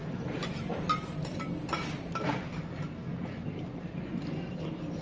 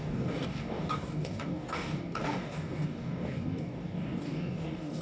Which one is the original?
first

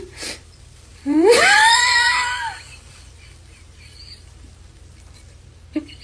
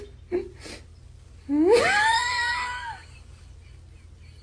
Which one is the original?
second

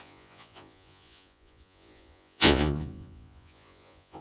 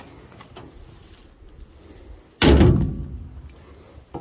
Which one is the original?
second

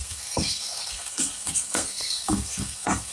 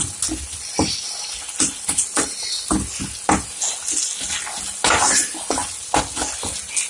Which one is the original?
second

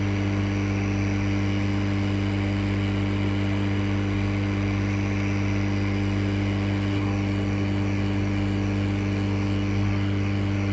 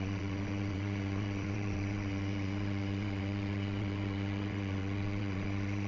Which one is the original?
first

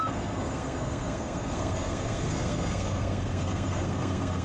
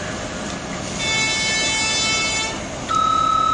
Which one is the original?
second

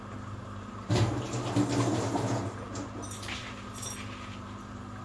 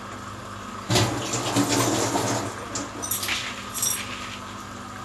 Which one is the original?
second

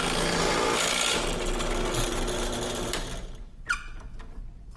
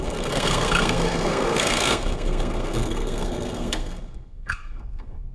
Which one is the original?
first